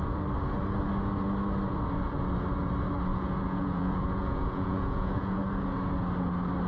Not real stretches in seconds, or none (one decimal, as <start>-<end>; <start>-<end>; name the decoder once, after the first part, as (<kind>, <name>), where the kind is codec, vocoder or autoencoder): 3.1-5.4 (vocoder, Vocos)